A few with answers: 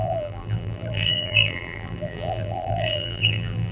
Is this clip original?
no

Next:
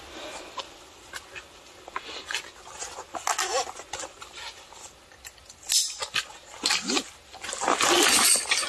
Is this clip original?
yes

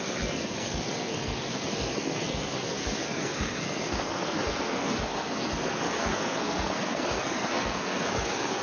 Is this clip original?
no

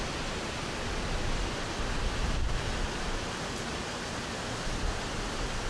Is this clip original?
yes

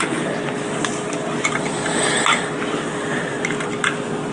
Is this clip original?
yes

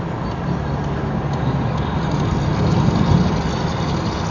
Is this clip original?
yes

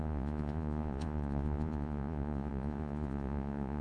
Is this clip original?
no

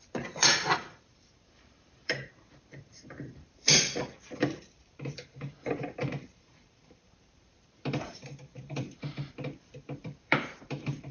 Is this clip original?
no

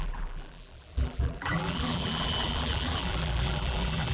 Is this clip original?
no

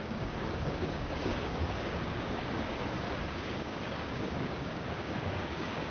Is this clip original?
no